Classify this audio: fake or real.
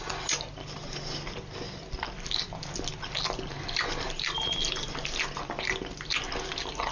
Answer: real